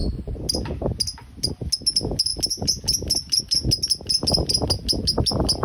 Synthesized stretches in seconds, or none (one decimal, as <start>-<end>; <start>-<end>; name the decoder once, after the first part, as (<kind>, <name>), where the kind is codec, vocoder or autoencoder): none